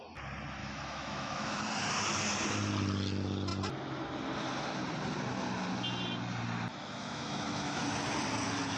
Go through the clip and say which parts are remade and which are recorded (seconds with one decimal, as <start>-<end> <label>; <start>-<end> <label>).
0.0-0.6 recorded; 0.6-1.6 remade; 1.6-6.7 recorded; 6.7-7.8 remade; 7.8-8.8 recorded